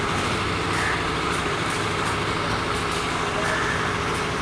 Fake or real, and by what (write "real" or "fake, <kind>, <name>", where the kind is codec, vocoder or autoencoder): real